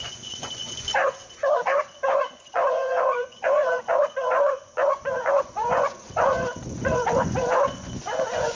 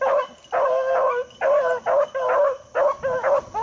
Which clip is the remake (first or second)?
first